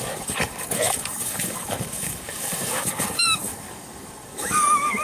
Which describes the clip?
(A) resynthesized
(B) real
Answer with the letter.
A